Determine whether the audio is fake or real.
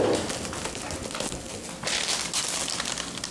real